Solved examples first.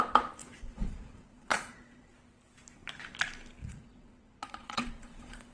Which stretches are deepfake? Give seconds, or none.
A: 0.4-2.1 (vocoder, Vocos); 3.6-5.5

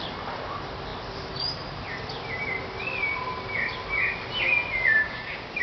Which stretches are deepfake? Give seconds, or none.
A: 5.0-5.6 (codec, DAC)

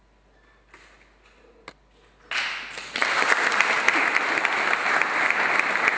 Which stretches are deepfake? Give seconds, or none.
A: none

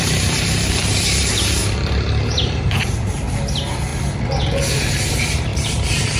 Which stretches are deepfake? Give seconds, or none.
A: 0.0-1.6 (vocoder, BigVGAN v2); 2.4-3.9; 4.9-5.5

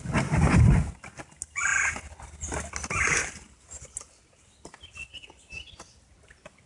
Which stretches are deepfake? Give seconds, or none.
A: none

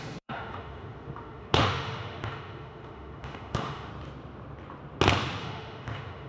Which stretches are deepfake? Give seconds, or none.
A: 0.0-3.9 (autoencoder, DAC-VAE); 5.4-6.3

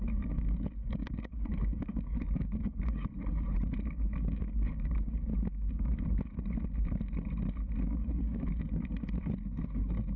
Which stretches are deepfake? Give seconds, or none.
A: 0.0-3.1 (codec, DAC); 4.2-5.3; 8.1-8.9